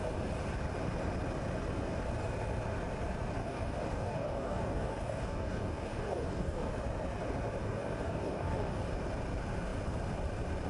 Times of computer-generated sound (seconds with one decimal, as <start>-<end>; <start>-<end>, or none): 3.4-6.7; 7.6-8.8